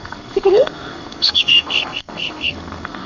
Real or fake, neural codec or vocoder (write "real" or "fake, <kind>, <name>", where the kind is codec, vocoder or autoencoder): fake, codec, SNAC